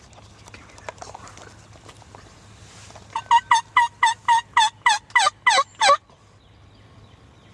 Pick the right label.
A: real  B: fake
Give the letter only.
A